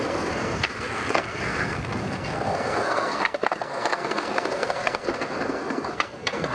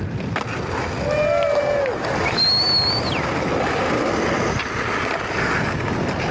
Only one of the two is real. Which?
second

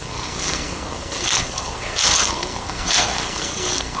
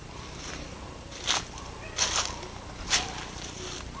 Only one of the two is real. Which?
second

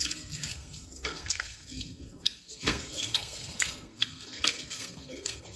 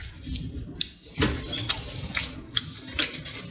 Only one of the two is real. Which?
second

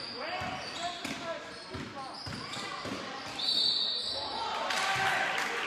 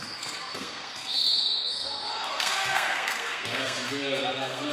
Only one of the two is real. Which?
first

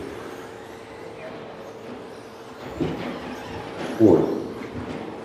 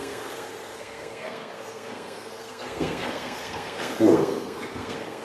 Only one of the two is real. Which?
first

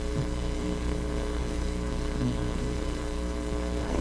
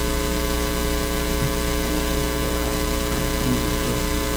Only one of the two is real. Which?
second